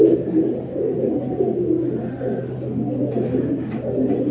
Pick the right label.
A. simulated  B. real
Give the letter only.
B